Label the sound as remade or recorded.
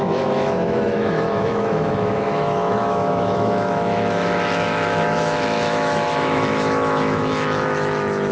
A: remade